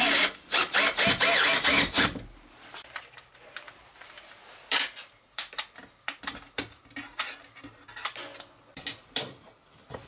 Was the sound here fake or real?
real